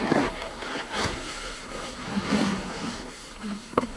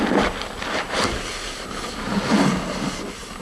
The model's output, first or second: first